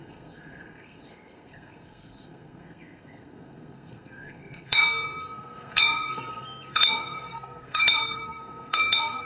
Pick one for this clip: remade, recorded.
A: remade